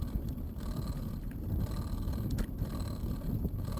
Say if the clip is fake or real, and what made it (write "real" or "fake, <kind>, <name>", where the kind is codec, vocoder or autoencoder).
real